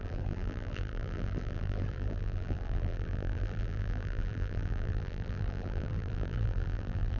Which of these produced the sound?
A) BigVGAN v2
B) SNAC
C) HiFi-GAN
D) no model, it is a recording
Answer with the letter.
A